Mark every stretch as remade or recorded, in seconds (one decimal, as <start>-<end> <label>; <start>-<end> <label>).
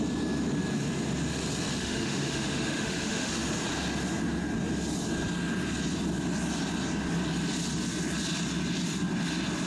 0.0-1.8 recorded; 1.8-3.3 remade; 3.3-9.7 recorded